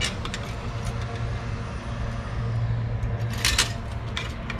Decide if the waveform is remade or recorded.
recorded